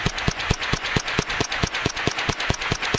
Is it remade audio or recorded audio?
remade